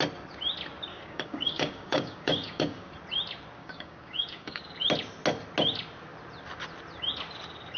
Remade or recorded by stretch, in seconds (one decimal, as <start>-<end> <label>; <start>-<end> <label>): 0.0-0.9 recorded; 0.9-2.9 remade; 2.9-3.6 recorded; 3.6-4.6 remade; 4.6-7.8 recorded